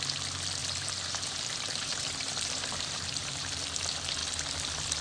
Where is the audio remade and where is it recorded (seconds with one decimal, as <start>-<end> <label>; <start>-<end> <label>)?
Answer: 0.0-0.6 recorded; 0.6-3.6 remade; 3.6-5.0 recorded